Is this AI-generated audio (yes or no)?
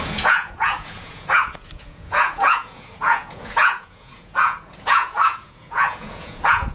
yes